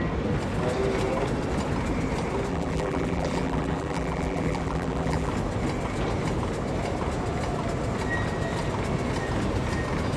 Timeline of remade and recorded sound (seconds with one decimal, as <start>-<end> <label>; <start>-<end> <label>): 0.0-2.5 recorded; 2.5-5.3 remade; 5.3-10.2 recorded